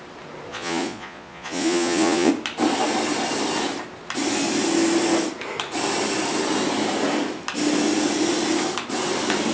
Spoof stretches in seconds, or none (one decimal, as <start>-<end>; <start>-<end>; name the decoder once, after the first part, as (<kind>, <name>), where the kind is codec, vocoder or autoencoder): 0.5-2.3 (vocoder, Vocos)